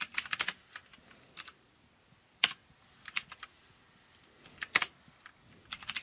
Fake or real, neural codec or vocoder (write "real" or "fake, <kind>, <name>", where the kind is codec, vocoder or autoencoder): real